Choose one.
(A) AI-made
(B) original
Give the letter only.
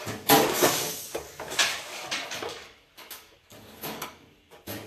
A